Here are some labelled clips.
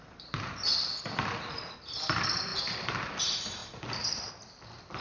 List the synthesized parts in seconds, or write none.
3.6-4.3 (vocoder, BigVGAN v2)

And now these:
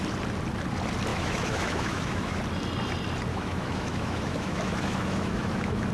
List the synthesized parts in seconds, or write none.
1.1-2.4 (autoencoder, DAC-VAE); 3.3-5.9

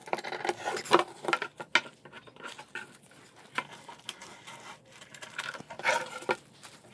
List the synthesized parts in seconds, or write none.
none

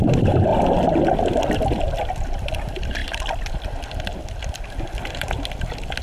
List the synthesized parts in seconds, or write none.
none

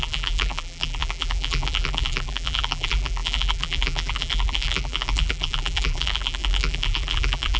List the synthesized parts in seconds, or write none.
0.0-7.6 (vocoder, BigVGAN v2)

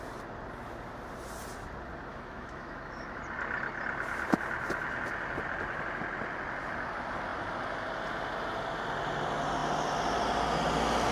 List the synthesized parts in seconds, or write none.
2.1-3.2 (autoencoder, DAC-VAE)

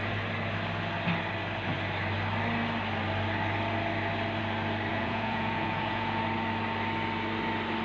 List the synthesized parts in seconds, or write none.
4.9-6.2 (vocoder, Vocos)